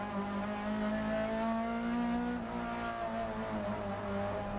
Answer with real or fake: real